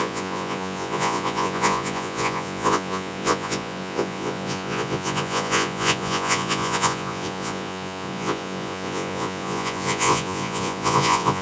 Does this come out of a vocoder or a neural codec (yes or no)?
yes